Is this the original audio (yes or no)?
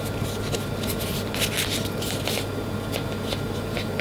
yes